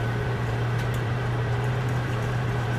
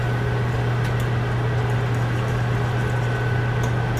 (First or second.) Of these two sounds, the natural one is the second